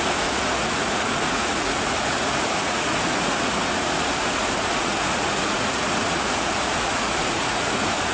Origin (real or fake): fake